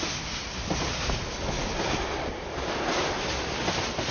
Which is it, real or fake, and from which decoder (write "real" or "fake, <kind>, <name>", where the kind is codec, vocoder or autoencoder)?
real